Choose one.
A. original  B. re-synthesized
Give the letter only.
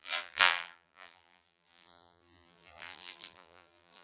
B